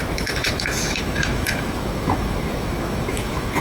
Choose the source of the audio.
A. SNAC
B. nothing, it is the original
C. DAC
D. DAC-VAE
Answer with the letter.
D